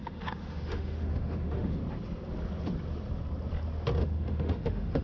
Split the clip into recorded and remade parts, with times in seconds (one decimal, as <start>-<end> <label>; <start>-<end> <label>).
0.0-1.8 remade; 1.8-4.0 recorded; 4.0-5.0 remade